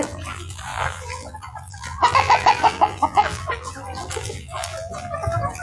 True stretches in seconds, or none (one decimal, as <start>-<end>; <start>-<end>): none